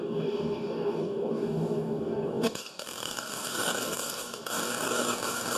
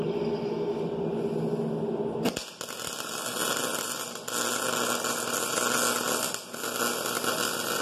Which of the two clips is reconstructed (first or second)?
first